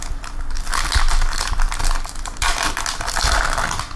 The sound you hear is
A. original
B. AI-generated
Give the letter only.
A